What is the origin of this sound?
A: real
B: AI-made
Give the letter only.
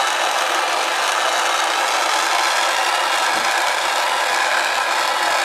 A